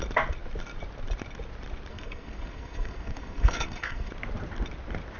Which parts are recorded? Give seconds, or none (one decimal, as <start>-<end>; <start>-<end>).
0.0-1.9; 4.1-5.2